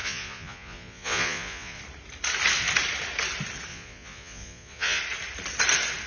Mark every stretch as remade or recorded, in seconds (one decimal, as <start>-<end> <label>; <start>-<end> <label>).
0.0-1.8 remade; 1.8-3.7 recorded; 3.7-5.0 remade; 5.0-6.1 recorded

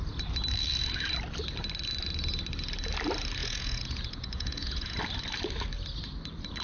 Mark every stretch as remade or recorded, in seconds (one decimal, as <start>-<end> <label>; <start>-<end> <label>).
0.0-3.4 recorded; 3.4-5.0 remade; 5.0-6.6 recorded

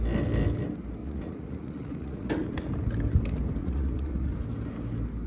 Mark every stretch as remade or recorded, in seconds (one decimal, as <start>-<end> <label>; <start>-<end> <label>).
0.0-1.0 recorded; 1.0-2.3 remade; 2.3-3.6 recorded; 3.6-4.3 remade; 4.3-5.3 recorded

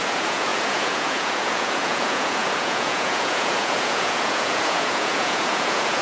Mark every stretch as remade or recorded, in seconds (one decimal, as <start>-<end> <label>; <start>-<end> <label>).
0.0-6.0 remade

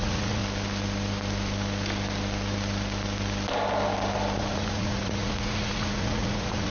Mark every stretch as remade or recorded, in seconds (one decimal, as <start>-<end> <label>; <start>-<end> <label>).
0.0-0.4 remade; 0.4-4.4 recorded; 4.4-6.7 remade

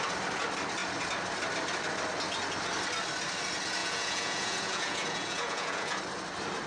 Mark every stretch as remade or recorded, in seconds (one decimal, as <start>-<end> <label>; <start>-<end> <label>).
0.0-3.8 recorded; 3.8-6.0 remade; 6.0-6.7 recorded